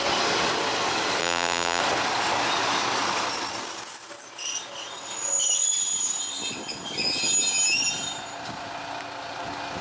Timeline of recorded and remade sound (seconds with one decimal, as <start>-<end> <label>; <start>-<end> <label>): 0.0-1.2 recorded; 1.2-1.8 remade; 1.8-9.8 recorded